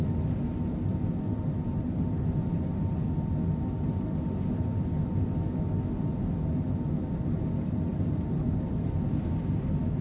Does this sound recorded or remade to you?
recorded